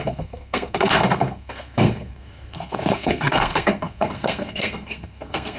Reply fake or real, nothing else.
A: fake